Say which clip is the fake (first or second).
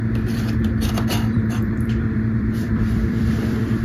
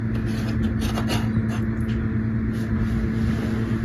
first